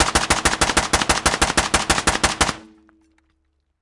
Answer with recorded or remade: recorded